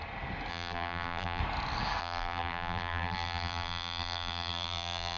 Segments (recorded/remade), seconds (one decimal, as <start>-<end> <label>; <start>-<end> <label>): 0.0-0.5 recorded; 0.5-1.4 remade; 1.4-2.0 recorded; 2.0-5.2 remade